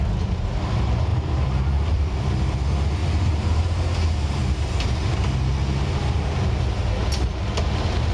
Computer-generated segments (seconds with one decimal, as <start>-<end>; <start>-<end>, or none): 1.1-2.3; 3.0-3.6